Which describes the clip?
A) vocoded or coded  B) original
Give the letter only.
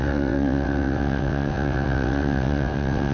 A